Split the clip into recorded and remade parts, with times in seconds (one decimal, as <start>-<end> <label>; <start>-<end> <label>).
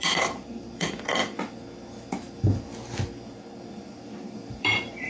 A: 0.0-1.2 remade; 1.2-3.7 recorded; 3.7-5.1 remade